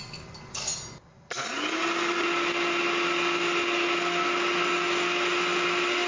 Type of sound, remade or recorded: recorded